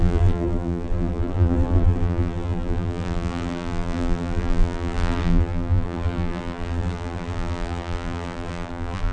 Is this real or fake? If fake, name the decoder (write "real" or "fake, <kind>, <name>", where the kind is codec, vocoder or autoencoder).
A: fake, vocoder, BigVGAN v2